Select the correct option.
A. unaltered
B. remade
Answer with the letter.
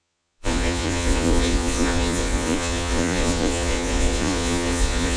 B